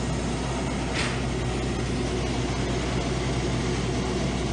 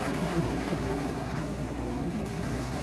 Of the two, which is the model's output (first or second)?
second